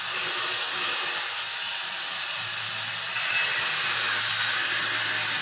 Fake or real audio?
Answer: real